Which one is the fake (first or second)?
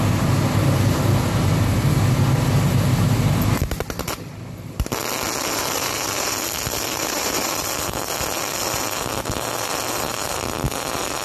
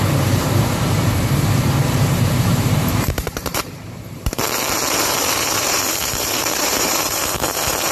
second